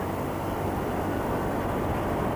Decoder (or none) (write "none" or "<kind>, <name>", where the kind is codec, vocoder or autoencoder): none